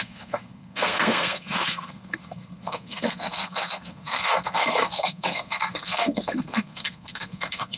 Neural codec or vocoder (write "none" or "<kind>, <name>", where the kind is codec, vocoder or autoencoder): codec, SNAC